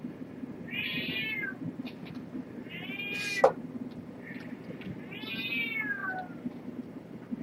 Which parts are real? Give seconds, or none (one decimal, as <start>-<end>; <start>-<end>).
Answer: 0.0-6.0